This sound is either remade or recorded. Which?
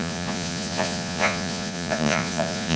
remade